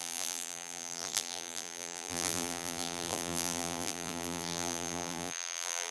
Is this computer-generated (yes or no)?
yes